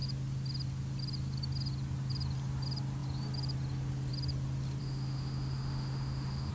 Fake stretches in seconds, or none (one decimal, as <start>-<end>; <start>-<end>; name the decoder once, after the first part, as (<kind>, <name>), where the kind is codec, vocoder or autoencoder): 4.8-6.5 (autoencoder, DAC-VAE)